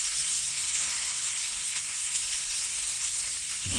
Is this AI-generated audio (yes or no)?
yes